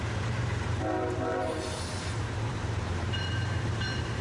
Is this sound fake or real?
fake